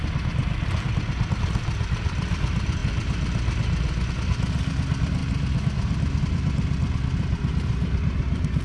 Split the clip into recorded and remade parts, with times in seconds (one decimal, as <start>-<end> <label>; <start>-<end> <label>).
0.0-8.6 recorded